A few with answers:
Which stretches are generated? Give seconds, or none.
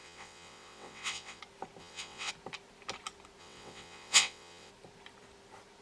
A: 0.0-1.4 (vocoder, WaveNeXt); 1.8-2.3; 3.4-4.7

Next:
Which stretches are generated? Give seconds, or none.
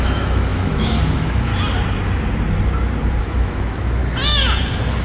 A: 0.0-1.5 (autoencoder, DAC-VAE); 3.2-4.0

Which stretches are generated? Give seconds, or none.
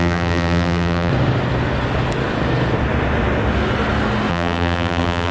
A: 0.0-1.1 (vocoder, BigVGAN v2); 4.3-5.3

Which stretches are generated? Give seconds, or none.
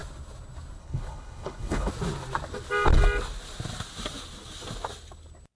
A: 0.8-1.9 (codec, HILCodec)